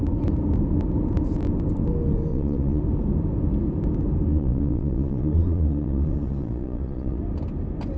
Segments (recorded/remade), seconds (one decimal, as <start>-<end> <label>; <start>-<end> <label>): 0.0-2.3 recorded; 2.3-2.8 remade; 2.8-4.3 recorded; 4.3-7.2 remade; 7.2-8.0 recorded